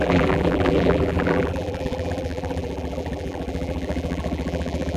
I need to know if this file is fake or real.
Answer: fake